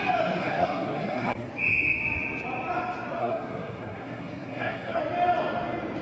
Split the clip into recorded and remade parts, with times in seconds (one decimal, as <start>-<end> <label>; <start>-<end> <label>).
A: 0.0-0.4 recorded; 0.4-1.5 remade; 1.5-3.2 recorded; 3.2-5.0 remade; 5.0-6.0 recorded